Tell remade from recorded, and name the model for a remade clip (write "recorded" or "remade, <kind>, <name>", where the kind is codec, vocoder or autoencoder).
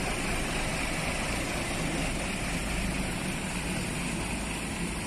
recorded